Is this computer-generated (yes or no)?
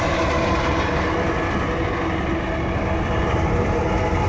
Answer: no